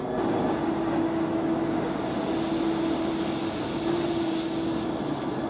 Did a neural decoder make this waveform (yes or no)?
no